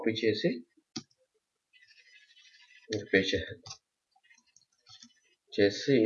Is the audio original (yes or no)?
yes